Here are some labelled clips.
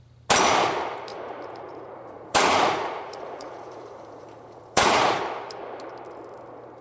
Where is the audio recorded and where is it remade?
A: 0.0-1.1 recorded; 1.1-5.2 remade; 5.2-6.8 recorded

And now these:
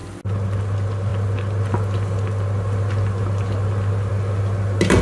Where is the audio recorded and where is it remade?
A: 0.0-5.0 recorded